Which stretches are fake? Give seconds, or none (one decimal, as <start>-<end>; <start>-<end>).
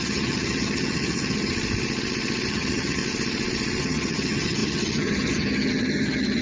0.0-1.5; 2.5-3.0; 3.8-6.4